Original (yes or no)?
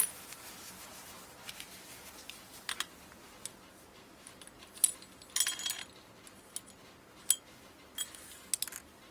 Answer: yes